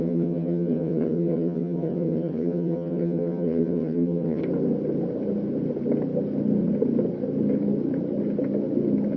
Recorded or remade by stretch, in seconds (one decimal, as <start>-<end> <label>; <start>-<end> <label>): 0.0-4.4 remade; 4.4-9.2 recorded